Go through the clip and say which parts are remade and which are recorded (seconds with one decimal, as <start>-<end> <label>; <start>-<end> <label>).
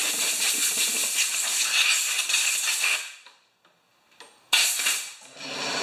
0.0-5.8 recorded